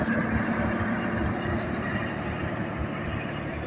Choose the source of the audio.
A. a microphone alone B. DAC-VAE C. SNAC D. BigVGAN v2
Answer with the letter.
A